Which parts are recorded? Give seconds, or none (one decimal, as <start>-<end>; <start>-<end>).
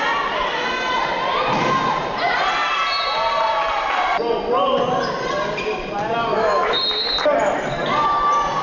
0.0-6.3; 6.8-8.6